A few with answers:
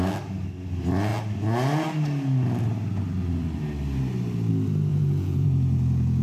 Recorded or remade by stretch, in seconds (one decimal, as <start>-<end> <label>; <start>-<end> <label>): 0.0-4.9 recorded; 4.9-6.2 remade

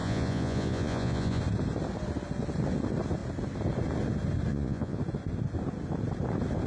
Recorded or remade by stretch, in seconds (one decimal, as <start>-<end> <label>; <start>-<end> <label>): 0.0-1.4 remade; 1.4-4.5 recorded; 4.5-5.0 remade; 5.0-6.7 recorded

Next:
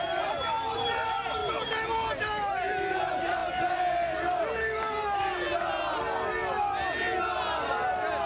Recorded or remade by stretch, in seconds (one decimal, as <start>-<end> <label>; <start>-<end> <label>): 0.0-8.3 recorded

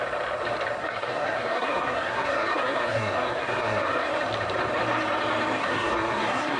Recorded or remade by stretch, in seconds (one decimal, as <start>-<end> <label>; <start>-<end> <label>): 0.0-0.8 recorded; 0.8-4.1 remade; 4.1-5.6 recorded; 5.6-6.6 remade

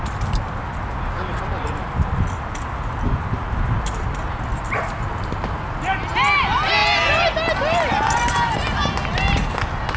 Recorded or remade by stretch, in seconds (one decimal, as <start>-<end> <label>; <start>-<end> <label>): 0.0-10.0 recorded

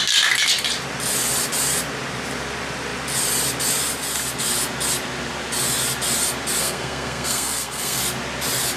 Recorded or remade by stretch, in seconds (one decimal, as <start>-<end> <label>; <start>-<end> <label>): 0.0-6.6 recorded; 6.6-8.0 remade; 8.0-8.8 recorded